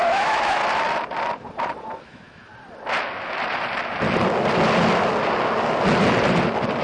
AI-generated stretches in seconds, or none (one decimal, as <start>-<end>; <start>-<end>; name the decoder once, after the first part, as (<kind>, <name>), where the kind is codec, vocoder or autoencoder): 0.0-0.6 (autoencoder, DAC-VAE); 2.0-2.5